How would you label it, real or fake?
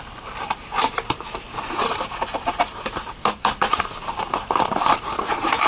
fake